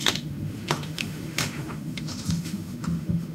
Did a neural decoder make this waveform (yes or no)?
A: yes